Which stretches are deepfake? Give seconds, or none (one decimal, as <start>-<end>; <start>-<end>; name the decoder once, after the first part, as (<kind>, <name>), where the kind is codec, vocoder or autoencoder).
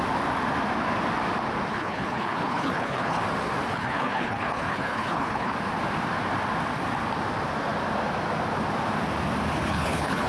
1.7-3.2 (codec, HILCodec); 3.7-5.5; 9.7-10.3